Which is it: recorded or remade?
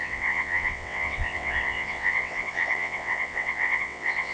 remade